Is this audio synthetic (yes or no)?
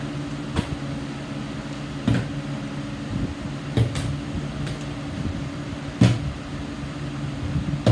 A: no